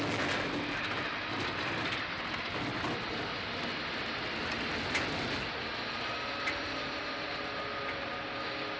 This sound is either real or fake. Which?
real